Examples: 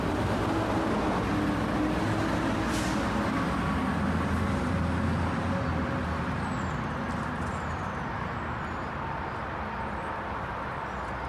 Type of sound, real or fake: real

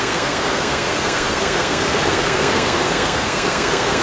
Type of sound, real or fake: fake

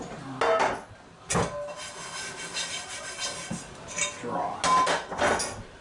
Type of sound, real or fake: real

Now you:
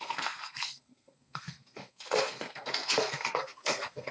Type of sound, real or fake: fake